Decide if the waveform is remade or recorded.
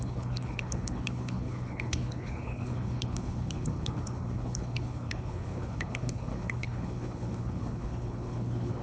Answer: remade